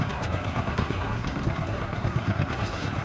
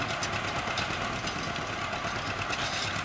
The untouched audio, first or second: second